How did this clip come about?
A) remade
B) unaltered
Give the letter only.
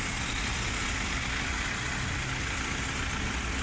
B